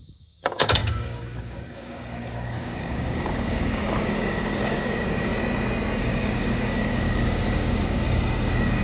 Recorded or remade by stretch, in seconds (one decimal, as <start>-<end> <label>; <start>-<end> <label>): 0.0-5.3 remade; 5.3-6.0 recorded; 6.0-8.8 remade